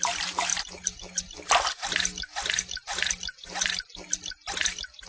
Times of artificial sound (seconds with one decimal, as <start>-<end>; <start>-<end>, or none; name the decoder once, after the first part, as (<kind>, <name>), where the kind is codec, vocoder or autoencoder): none